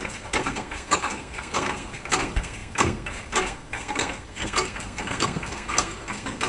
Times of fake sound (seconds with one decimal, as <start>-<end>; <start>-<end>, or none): 0.0-6.5